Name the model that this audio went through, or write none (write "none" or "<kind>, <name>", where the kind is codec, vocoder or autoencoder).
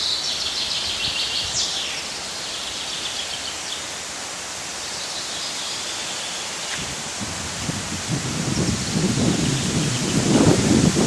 vocoder, BigVGAN v2